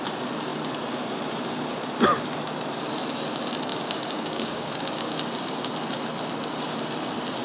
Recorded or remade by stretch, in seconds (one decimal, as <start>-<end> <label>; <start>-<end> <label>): 0.0-3.7 recorded; 3.7-5.1 remade; 5.1-7.4 recorded